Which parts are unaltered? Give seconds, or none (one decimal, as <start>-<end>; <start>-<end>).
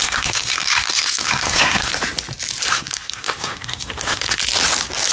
1.9-2.7; 4.4-5.1